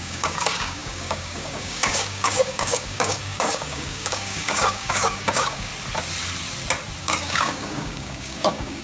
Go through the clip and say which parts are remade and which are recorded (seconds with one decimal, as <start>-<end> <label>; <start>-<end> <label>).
0.0-5.7 remade; 5.7-7.0 recorded; 7.0-8.8 remade